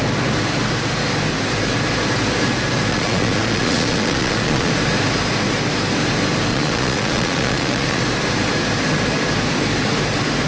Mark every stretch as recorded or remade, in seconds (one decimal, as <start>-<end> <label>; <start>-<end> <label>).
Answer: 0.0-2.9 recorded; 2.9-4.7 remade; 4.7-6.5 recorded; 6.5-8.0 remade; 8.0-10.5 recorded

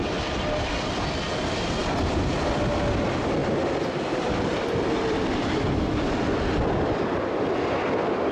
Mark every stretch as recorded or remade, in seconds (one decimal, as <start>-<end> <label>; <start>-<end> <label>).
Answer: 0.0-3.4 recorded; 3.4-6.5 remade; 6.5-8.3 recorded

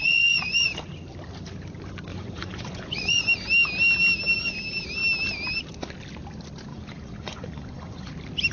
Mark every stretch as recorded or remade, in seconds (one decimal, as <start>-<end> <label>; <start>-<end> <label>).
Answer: 0.0-0.7 remade; 0.7-2.1 recorded; 2.1-3.2 remade; 3.2-6.7 recorded; 6.7-8.1 remade; 8.1-8.5 recorded

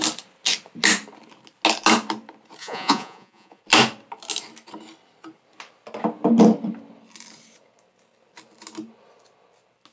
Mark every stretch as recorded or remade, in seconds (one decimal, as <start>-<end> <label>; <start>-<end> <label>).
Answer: 0.0-2.6 recorded; 2.6-3.6 remade; 3.6-9.9 recorded

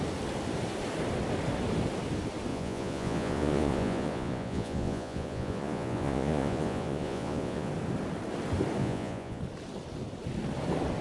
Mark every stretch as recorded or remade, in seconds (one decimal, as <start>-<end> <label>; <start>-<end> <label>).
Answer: 0.0-2.5 recorded; 2.5-7.7 remade; 7.7-8.8 recorded; 8.8-9.4 remade; 9.4-11.0 recorded